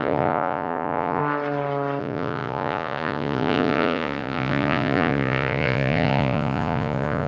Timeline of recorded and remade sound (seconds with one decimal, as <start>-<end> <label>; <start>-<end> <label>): 0.0-1.2 remade; 1.2-2.0 recorded; 2.0-7.3 remade